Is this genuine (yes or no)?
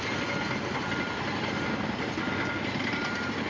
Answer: yes